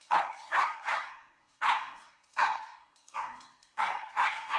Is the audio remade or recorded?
remade